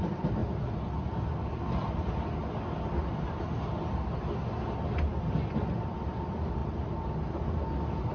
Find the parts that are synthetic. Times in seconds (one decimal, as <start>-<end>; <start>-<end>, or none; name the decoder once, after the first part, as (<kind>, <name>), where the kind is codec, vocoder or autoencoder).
0.0-0.4 (vocoder, BigVGAN v2); 5.3-6.6